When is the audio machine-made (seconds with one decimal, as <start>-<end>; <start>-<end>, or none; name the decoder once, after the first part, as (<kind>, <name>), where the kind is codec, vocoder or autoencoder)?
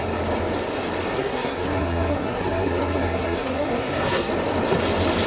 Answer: 1.1-4.3 (codec, SNAC)